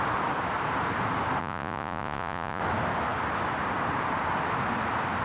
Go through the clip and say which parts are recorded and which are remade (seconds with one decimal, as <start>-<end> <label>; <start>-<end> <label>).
0.0-1.4 recorded; 1.4-2.6 remade; 2.6-5.2 recorded